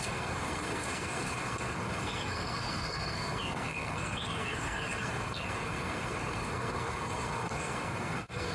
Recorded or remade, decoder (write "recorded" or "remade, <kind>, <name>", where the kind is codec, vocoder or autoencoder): remade, codec, SNAC